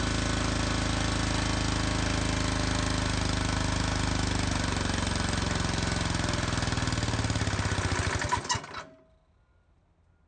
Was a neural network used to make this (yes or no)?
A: no